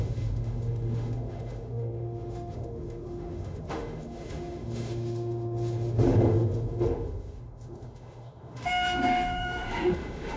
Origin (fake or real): fake